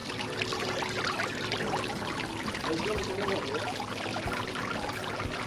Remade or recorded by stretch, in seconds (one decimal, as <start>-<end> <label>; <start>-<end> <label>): 0.0-5.5 recorded